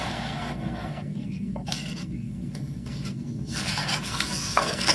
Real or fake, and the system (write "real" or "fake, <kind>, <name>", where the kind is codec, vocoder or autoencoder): fake, codec, SNAC